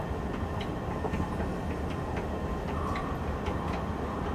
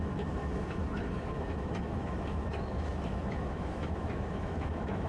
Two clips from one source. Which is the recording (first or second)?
first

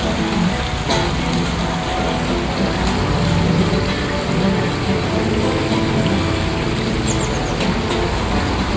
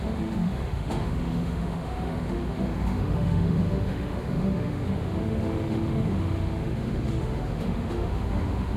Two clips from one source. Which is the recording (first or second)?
first